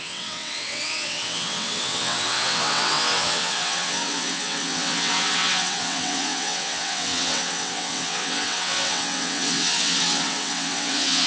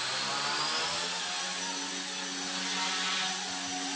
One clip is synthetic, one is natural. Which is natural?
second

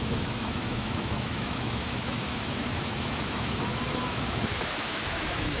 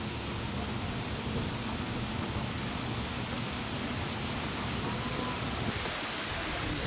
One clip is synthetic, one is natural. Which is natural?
second